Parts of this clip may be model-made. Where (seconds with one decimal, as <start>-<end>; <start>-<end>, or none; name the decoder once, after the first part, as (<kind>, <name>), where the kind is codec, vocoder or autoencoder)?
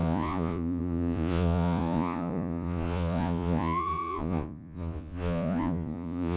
0.0-6.4 (vocoder, Vocos)